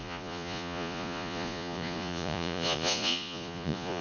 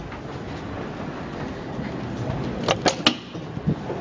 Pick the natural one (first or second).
second